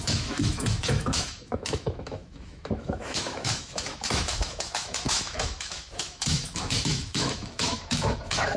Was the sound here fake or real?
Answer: fake